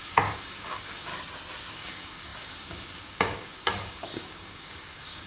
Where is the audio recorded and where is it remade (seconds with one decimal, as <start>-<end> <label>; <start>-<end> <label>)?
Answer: 0.0-1.1 remade; 1.1-1.7 recorded; 1.7-5.3 remade